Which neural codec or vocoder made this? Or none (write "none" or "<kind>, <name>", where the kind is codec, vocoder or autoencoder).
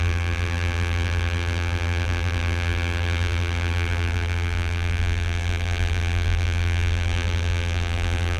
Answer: vocoder, BigVGAN v2